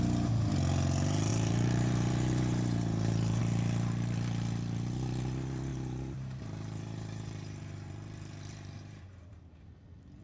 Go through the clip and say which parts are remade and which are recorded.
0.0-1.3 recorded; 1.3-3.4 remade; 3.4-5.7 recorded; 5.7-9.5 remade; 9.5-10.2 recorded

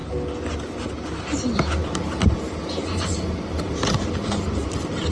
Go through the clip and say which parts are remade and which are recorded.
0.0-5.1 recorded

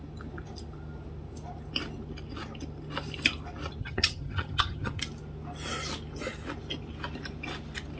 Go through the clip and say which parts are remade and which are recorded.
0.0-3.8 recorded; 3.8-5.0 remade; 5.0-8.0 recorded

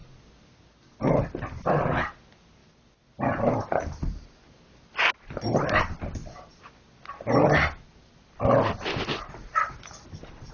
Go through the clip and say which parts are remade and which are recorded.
0.0-10.5 recorded

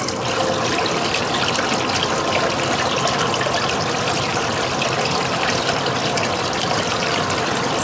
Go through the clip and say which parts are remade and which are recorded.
0.0-7.8 recorded

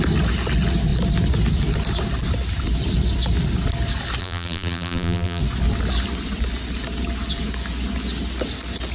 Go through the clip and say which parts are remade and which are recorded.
0.0-4.2 recorded; 4.2-5.4 remade; 5.4-8.9 recorded

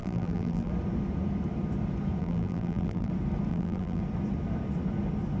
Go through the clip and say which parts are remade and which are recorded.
0.0-0.7 remade; 0.7-2.2 recorded; 2.2-3.1 remade; 3.1-3.5 recorded; 3.5-4.0 remade; 4.0-5.4 recorded

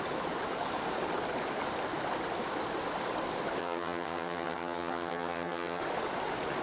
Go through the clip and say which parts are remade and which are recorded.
0.0-3.6 recorded; 3.6-5.8 remade; 5.8-6.6 recorded